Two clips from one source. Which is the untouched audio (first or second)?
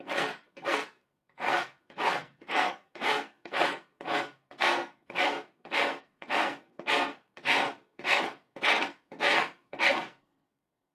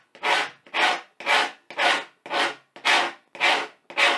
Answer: second